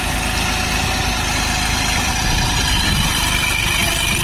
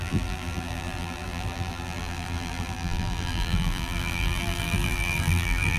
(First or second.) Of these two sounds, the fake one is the second